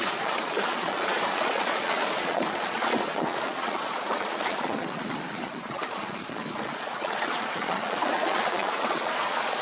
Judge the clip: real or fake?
fake